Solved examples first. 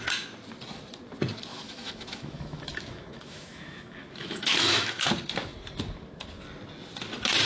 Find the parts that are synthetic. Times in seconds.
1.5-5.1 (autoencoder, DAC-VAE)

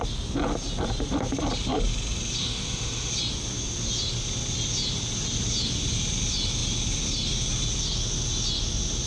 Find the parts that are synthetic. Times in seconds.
2.4-3.1 (autoencoder, DAC-VAE)